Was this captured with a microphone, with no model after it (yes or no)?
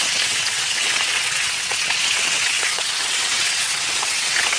no